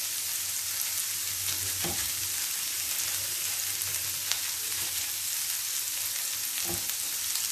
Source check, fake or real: real